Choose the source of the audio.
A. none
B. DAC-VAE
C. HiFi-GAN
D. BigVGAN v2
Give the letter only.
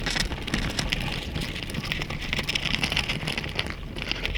A